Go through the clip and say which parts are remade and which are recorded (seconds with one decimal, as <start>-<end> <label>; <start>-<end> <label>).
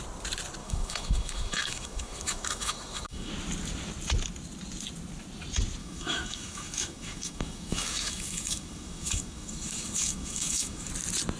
0.0-0.6 recorded; 0.6-3.3 remade; 3.3-5.8 recorded; 5.8-10.9 remade; 10.9-11.4 recorded